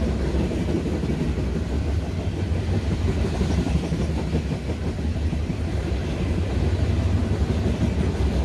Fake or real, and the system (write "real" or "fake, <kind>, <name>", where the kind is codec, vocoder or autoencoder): real